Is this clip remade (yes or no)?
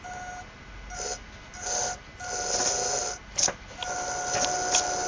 no